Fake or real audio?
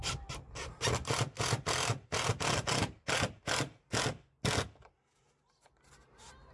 real